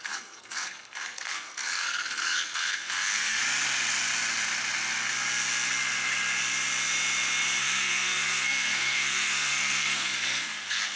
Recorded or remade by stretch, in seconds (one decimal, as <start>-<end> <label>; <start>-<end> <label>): 0.0-3.4 remade; 3.4-7.6 recorded; 7.6-10.9 remade